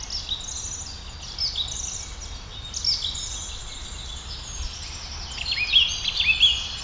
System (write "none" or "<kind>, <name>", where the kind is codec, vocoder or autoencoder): none